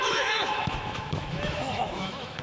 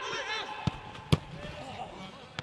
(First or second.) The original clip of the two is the second